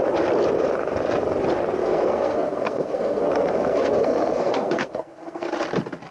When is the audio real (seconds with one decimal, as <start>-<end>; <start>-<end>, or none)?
0.0-1.8; 5.5-6.1